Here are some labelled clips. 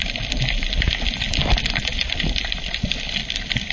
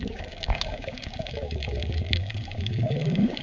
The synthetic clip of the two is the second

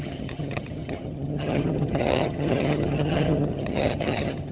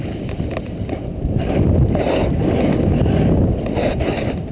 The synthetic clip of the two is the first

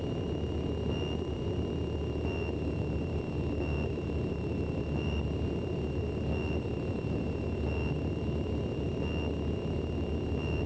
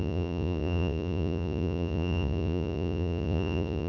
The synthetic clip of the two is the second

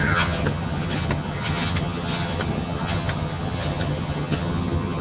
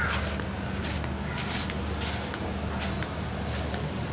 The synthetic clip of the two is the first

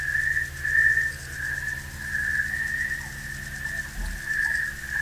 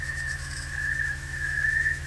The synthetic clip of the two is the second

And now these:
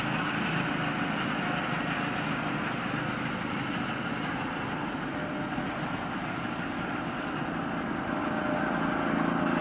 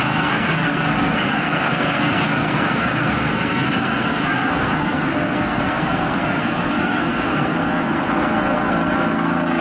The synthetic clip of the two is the second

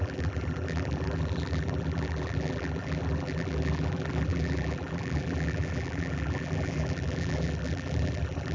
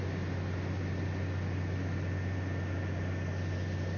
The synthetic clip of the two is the first